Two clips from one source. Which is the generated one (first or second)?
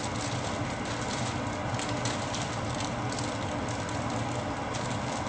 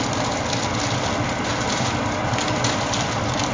second